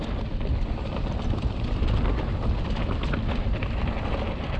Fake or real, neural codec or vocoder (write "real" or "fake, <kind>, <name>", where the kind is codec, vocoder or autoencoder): real